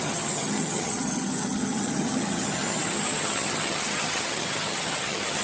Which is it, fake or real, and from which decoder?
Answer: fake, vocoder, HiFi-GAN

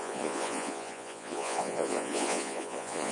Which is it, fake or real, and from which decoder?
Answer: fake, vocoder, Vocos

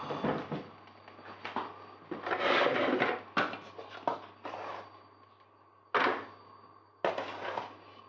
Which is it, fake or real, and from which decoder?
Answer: real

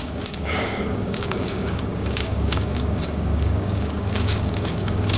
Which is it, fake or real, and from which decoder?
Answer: fake, codec, DAC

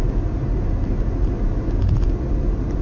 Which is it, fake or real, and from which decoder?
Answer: real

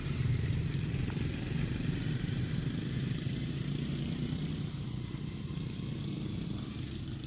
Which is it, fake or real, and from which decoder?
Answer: fake, vocoder, BigVGAN v2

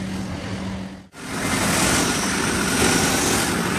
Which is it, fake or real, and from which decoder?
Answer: real